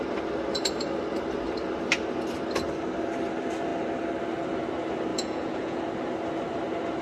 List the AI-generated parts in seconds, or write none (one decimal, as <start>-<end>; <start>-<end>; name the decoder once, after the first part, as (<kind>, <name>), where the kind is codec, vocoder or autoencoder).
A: 5.1-5.8 (vocoder, Vocos)